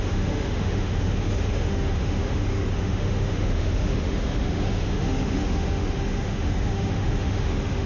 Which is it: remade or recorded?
remade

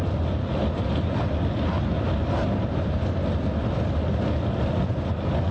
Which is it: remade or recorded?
recorded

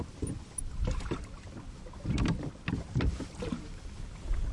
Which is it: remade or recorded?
recorded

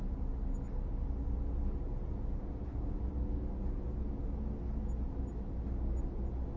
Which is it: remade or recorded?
recorded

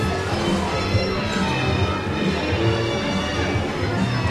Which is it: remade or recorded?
recorded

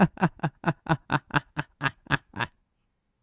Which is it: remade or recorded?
remade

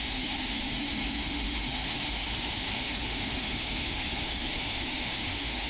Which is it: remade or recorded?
remade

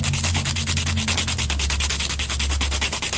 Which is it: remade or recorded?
recorded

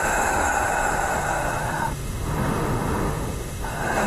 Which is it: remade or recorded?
remade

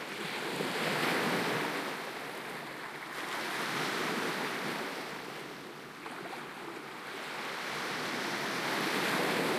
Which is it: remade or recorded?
recorded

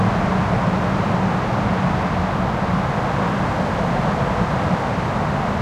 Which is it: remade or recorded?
recorded